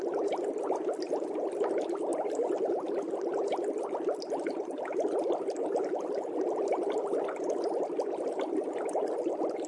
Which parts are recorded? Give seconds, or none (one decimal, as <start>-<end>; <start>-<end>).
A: 0.0-9.7